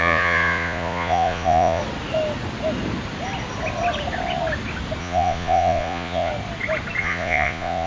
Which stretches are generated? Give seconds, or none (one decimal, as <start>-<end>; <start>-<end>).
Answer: 0.0-1.8; 5.0-6.3; 7.0-7.9